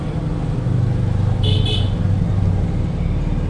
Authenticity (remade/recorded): recorded